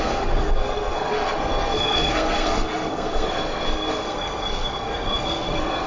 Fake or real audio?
fake